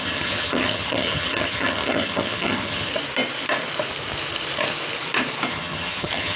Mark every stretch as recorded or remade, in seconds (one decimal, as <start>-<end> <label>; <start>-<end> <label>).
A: 0.0-2.9 remade; 2.9-5.5 recorded; 5.5-6.4 remade